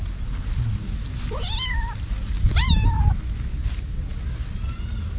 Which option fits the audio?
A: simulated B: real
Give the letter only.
B